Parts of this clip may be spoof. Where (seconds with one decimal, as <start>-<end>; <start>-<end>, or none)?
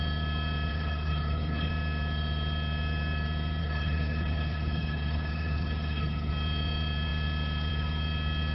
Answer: 0.7-1.7; 3.6-6.3